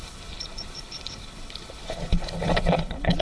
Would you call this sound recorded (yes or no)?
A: no